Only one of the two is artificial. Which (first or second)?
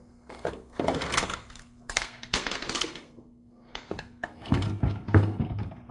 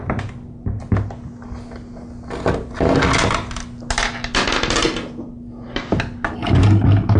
first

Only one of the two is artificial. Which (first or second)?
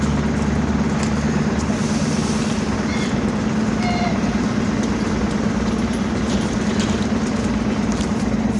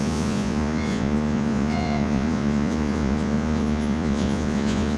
second